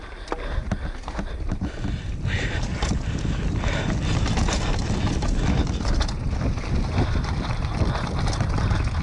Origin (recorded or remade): recorded